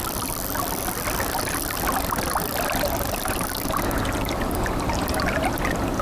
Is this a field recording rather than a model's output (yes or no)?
yes